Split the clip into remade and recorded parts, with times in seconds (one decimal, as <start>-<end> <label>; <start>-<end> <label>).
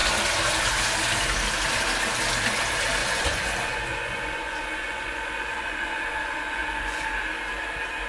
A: 0.0-3.0 recorded; 3.0-7.0 remade; 7.0-8.1 recorded